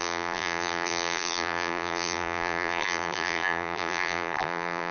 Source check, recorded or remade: remade